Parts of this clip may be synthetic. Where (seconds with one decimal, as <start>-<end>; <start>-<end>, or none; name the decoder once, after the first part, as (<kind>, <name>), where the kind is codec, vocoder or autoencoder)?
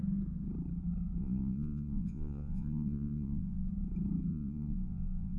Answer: 1.2-3.7 (vocoder, Vocos); 4.3-5.4